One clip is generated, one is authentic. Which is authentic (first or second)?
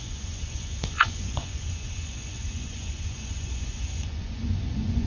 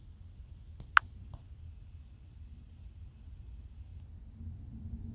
second